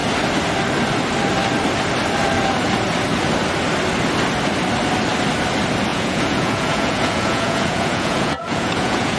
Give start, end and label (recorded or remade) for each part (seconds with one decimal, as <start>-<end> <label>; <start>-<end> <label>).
0.0-5.9 recorded; 5.9-9.2 remade